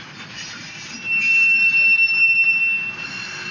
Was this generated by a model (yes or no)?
no